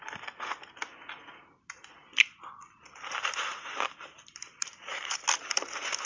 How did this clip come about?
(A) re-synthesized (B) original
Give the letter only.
B